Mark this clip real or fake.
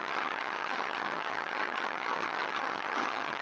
fake